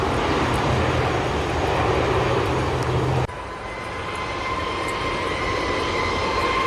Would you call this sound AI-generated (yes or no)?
no